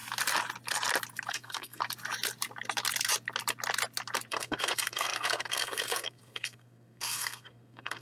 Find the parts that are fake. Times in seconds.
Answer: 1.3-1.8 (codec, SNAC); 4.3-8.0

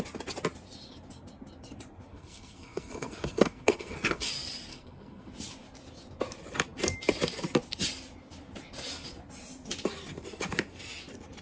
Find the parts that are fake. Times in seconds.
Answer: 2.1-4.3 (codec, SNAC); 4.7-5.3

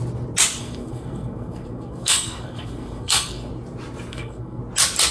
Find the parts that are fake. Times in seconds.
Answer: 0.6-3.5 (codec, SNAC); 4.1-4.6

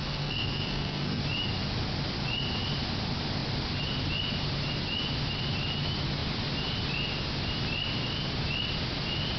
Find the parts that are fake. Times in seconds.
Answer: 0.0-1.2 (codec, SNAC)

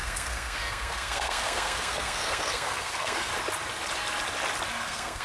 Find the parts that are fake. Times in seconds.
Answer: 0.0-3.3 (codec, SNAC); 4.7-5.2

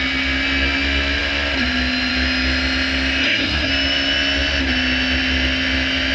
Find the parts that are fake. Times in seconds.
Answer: 3.2-3.7 (codec, SNAC)

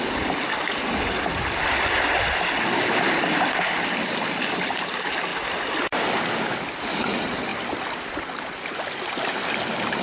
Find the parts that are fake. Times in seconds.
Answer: none

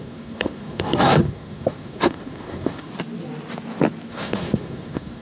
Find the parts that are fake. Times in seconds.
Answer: 0.0-2.9 (codec, SNAC); 4.1-5.2